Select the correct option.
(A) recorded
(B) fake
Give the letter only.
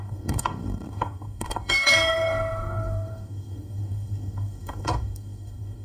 B